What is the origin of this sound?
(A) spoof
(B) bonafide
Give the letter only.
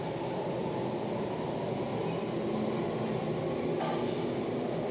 B